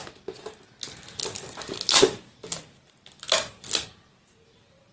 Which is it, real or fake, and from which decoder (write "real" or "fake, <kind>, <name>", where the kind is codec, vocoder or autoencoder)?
real